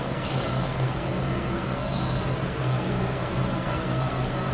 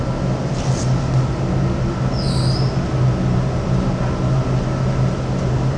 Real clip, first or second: second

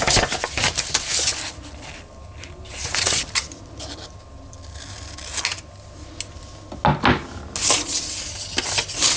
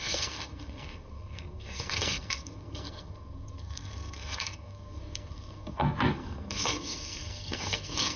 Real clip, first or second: first